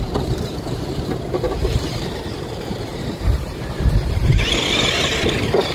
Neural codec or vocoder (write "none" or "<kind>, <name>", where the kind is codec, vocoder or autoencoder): vocoder, BigVGAN v2